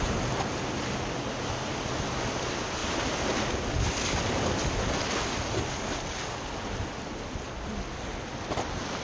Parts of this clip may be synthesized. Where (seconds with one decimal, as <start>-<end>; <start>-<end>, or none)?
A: none